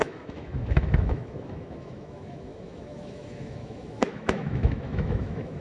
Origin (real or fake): fake